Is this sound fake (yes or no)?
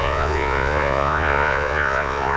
yes